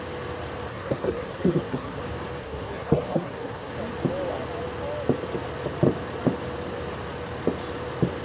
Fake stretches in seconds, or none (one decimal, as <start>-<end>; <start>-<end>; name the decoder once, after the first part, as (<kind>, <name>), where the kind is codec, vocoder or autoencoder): 0.7-2.0 (codec, SNAC); 2.4-3.7